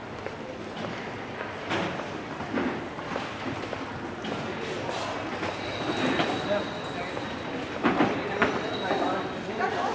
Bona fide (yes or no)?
yes